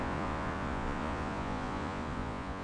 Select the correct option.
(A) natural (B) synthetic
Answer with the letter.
B